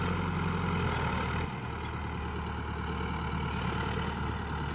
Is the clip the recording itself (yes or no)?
yes